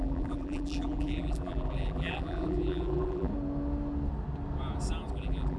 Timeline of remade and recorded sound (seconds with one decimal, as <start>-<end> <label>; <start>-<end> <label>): 0.0-3.3 remade; 3.3-5.1 recorded; 5.1-5.6 remade